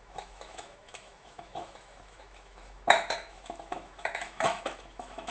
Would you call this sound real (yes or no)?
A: no